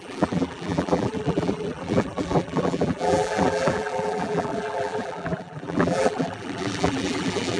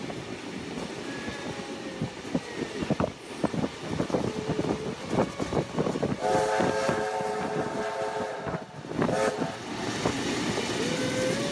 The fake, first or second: first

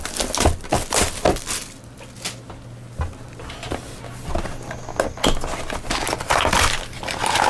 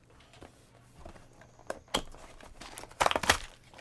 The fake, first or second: second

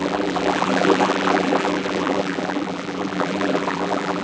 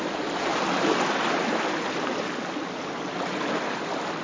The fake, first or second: first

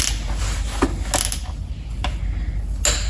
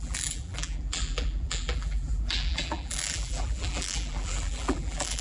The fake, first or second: second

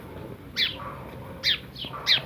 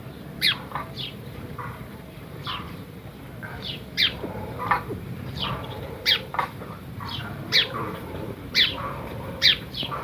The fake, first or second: second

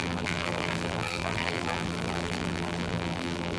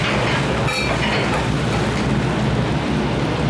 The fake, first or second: first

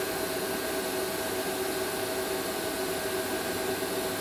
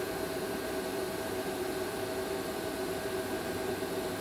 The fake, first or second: second